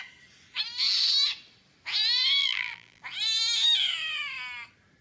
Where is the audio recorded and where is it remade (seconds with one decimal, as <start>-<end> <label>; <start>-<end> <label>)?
0.0-2.4 recorded; 2.4-3.0 remade; 3.0-5.0 recorded